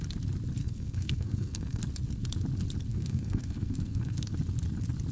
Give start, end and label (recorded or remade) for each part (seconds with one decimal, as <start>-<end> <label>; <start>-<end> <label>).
0.0-0.6 recorded; 0.6-1.8 remade; 1.8-2.9 recorded; 2.9-4.3 remade; 4.3-5.1 recorded